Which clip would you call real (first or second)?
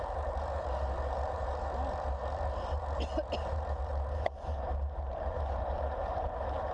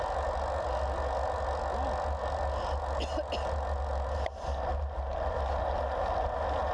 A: second